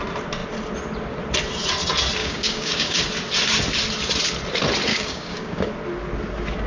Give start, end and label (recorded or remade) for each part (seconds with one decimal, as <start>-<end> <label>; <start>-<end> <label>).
0.0-2.2 recorded; 2.2-3.0 remade; 3.0-4.9 recorded; 4.9-5.7 remade; 5.7-6.7 recorded